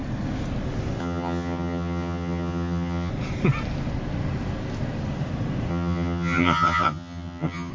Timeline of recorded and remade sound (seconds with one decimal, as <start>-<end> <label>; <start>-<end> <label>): 0.0-1.0 recorded; 1.0-3.1 remade; 3.1-5.7 recorded; 5.7-7.7 remade